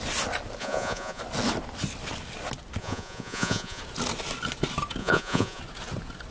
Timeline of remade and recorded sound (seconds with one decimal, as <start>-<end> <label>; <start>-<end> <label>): 0.0-0.6 recorded; 0.6-1.2 remade; 1.2-2.8 recorded; 2.8-3.8 remade; 3.8-5.0 recorded; 5.0-5.6 remade; 5.6-6.3 recorded